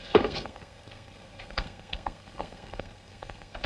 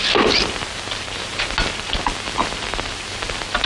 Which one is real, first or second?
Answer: second